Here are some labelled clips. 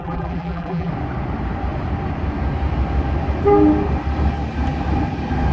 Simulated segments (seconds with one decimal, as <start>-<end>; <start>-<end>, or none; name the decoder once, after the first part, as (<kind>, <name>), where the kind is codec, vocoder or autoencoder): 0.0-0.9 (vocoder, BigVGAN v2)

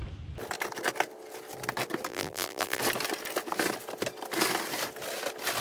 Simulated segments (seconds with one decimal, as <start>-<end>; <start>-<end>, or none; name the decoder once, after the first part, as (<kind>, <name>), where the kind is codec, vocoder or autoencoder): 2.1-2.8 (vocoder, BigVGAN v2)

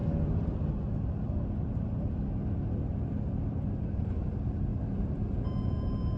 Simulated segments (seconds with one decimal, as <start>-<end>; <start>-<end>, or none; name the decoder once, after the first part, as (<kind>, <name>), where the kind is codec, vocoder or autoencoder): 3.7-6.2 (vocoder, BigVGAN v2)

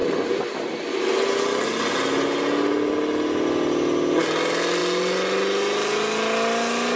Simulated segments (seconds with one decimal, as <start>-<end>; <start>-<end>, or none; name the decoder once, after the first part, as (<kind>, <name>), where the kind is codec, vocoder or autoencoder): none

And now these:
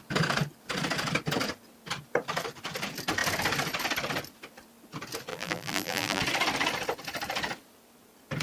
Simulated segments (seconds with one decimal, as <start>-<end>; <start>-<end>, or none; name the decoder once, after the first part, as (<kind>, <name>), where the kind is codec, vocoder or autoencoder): 5.3-6.2 (vocoder, BigVGAN v2)

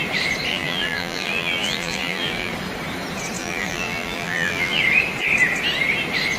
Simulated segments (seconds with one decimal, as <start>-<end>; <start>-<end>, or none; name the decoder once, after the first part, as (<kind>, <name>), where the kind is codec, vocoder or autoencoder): 0.5-2.5 (vocoder, BigVGAN v2); 3.4-4.8

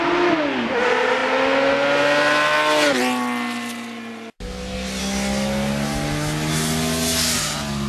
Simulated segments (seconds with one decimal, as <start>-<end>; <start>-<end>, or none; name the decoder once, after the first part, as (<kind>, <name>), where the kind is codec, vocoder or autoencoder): none